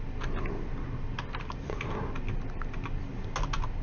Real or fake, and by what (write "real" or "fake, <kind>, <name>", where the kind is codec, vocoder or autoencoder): real